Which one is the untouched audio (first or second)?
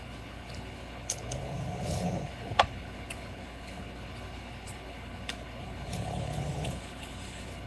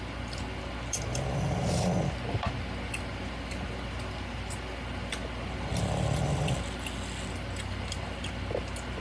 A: second